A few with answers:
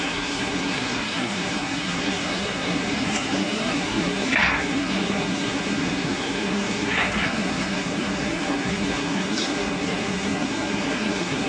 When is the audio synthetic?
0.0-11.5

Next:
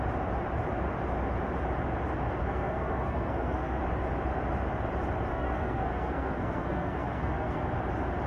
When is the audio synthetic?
2.4-3.8; 5.3-7.6

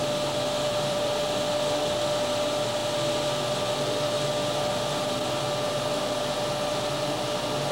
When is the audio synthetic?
0.7-1.2

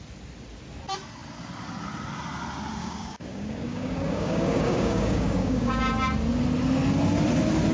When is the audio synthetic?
2.8-5.8